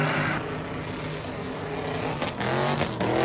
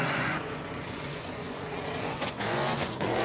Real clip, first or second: first